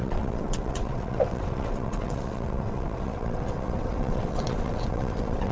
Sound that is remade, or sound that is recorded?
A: remade